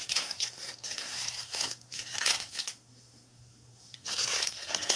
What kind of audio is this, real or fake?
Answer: fake